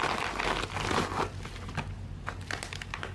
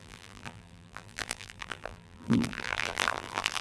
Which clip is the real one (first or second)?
first